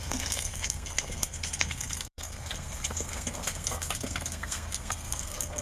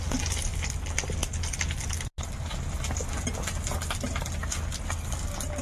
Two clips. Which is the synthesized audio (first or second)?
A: first